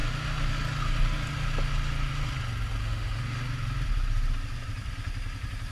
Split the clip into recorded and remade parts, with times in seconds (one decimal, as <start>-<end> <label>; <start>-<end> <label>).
0.0-2.8 recorded; 2.8-3.4 remade; 3.4-5.7 recorded